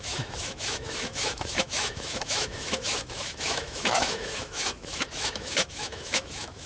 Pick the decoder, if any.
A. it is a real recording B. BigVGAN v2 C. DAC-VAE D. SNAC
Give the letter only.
C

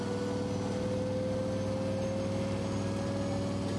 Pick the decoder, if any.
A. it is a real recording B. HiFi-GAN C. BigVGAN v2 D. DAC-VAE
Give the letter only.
A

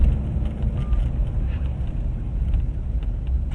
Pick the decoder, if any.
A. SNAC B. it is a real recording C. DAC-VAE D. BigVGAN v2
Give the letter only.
B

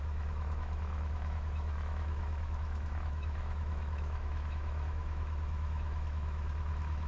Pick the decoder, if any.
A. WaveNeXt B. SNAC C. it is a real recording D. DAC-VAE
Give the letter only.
D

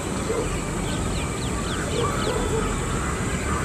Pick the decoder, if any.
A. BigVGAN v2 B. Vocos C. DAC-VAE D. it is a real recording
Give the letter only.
D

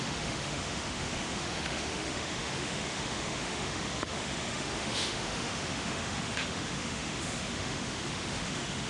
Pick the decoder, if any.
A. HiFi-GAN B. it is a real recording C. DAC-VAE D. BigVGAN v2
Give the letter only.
C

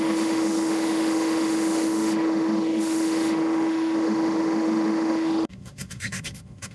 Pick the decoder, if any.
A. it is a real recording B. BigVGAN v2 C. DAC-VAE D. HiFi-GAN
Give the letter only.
C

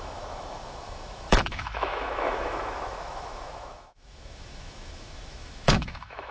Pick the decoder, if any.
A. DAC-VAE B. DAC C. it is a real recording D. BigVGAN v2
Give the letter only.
A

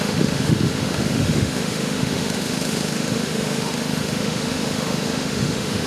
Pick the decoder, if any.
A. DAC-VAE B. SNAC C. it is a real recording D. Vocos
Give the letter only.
A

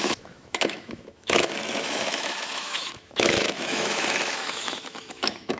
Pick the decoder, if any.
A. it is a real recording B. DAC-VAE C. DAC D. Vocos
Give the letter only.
B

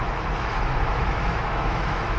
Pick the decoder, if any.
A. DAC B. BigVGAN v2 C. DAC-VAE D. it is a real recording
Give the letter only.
C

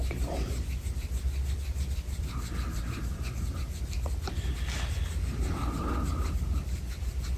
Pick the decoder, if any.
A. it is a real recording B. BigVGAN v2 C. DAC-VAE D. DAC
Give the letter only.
A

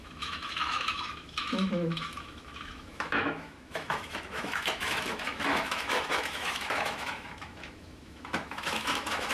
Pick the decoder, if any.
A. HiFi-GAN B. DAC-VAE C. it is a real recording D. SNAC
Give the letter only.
B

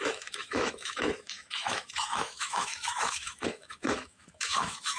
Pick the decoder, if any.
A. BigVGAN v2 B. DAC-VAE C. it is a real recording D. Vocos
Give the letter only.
B